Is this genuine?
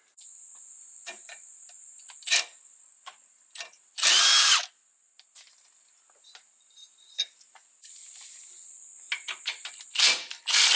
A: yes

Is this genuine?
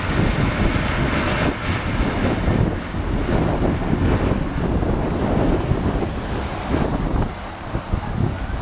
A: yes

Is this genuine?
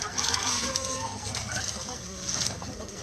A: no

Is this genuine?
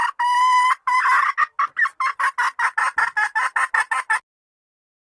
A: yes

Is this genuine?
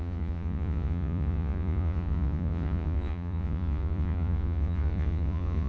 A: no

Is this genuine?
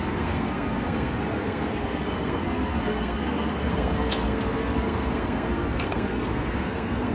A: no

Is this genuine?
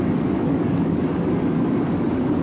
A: no